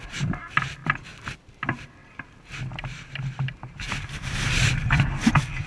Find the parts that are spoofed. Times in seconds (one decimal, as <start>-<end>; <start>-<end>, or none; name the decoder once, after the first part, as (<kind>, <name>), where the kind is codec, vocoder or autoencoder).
2.0-5.3 (vocoder, BigVGAN v2)